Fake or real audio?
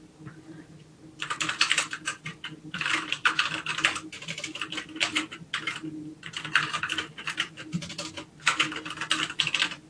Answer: real